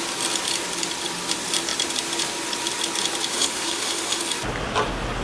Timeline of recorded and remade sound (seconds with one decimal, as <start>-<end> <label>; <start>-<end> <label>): 0.0-3.3 recorded; 3.3-4.2 remade; 4.2-5.2 recorded